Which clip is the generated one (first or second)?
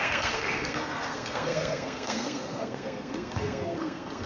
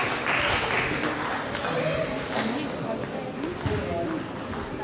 first